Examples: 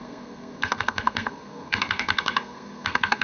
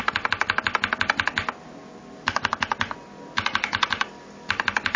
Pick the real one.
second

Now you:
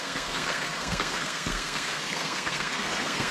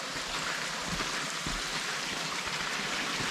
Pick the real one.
second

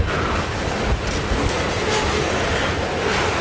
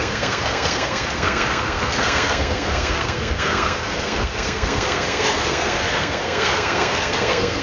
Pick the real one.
first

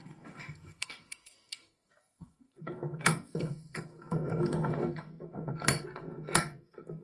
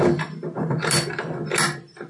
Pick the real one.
second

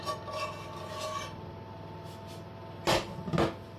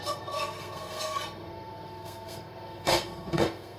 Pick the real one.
first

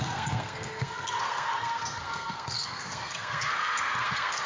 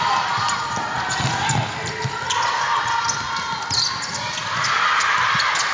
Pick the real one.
second